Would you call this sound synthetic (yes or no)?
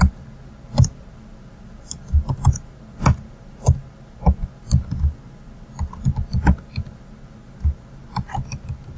no